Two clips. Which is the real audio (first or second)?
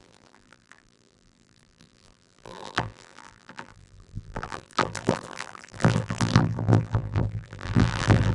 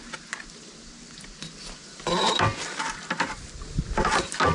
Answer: second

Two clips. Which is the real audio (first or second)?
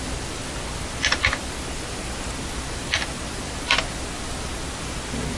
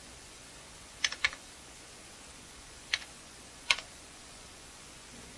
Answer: first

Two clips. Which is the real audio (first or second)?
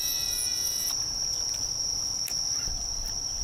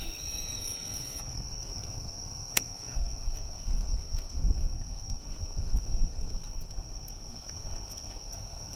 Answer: first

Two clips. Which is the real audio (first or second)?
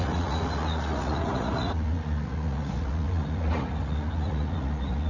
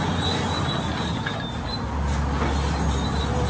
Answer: second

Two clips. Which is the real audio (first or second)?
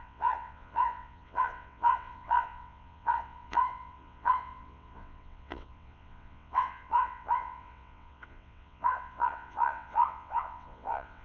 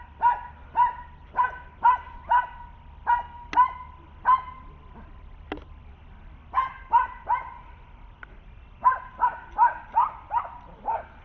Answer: second